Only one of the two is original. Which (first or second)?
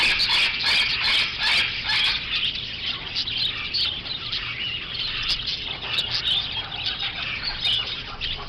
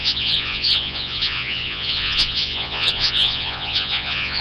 first